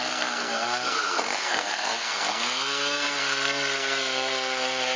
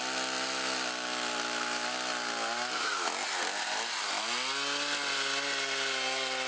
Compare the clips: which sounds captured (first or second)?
second